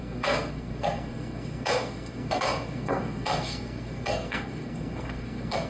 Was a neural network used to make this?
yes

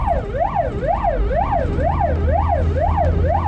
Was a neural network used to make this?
no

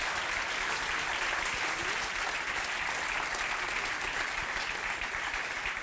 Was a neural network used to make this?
no